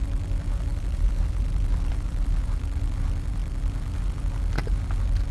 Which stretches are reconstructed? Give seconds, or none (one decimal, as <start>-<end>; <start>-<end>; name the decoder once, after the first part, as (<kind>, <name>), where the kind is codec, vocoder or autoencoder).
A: 0.7-2.4 (vocoder, BigVGAN v2)